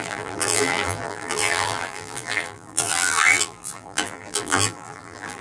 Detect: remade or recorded remade